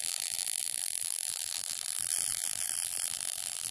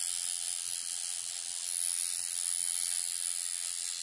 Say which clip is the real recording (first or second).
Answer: second